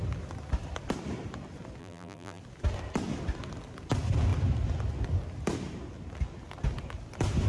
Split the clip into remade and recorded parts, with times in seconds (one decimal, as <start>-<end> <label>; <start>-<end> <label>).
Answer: 0.0-1.8 recorded; 1.8-2.4 remade; 2.4-7.5 recorded